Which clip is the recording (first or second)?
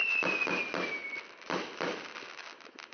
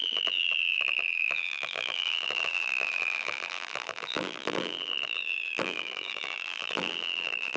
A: first